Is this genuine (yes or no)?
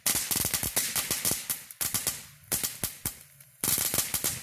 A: yes